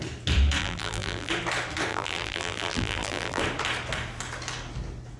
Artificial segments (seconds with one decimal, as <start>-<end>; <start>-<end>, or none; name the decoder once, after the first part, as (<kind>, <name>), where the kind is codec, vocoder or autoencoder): 0.6-1.3 (vocoder, BigVGAN v2); 1.9-3.4